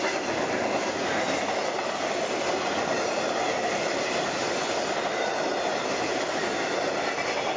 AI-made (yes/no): no